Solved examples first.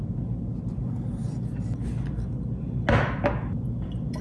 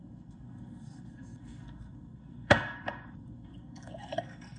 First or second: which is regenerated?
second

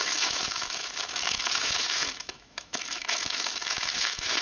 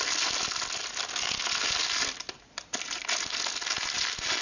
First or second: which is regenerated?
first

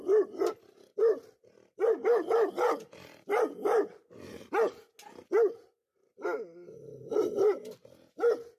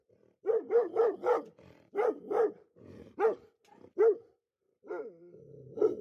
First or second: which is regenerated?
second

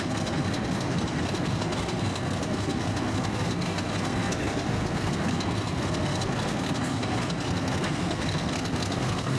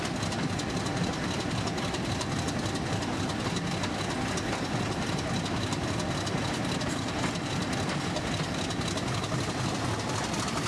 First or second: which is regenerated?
first